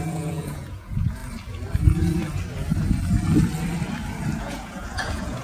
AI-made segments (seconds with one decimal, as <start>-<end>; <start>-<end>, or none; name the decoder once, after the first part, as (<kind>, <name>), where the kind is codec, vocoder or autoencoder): 0.0-1.2 (vocoder, Vocos); 4.4-5.4